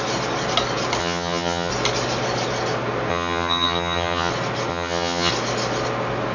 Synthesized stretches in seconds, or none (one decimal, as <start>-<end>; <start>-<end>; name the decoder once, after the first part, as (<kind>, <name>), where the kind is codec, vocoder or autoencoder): 1.0-1.7 (vocoder, HiFi-GAN); 3.1-4.3; 4.7-5.3